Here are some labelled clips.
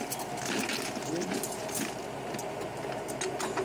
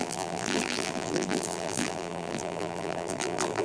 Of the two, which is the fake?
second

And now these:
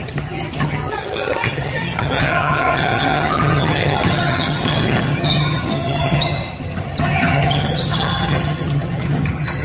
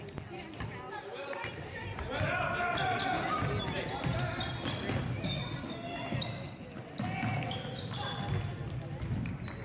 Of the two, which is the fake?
first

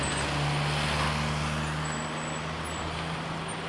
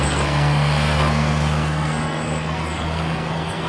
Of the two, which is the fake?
second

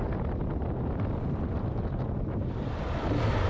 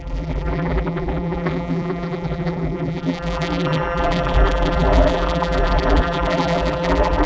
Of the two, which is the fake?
second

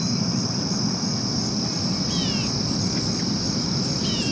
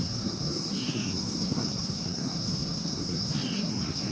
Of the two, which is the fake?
second